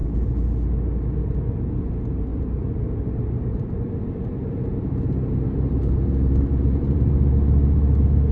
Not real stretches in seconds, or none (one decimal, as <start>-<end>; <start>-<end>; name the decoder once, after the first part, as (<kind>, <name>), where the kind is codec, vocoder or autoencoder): 2.3-7.1 (vocoder, BigVGAN v2)